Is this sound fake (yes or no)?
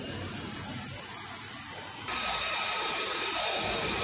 no